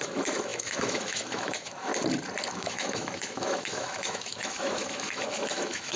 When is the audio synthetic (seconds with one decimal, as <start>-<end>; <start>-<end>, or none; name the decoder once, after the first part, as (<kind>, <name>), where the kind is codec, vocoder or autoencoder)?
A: 0.0-1.9 (autoencoder, DAC-VAE); 2.5-6.0